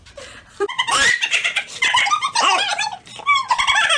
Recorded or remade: remade